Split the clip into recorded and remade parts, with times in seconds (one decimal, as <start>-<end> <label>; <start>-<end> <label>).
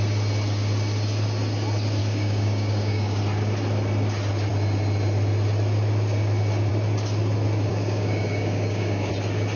0.0-2.0 recorded; 2.0-3.2 remade; 3.2-7.7 recorded; 7.7-9.1 remade; 9.1-9.6 recorded